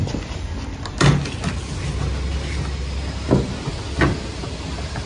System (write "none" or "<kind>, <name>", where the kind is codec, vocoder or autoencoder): none